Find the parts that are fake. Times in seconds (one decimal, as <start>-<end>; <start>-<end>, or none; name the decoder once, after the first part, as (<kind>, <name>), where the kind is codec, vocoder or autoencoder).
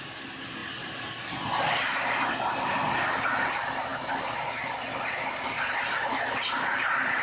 none